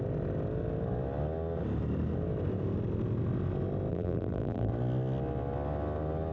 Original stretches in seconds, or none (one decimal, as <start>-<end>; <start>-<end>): 0.0-3.9; 4.7-6.3